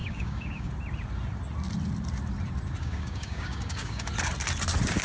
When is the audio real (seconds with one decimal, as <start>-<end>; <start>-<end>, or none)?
0.7-2.8; 4.1-5.0